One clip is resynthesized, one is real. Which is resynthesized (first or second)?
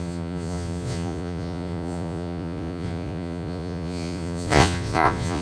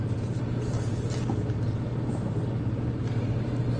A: first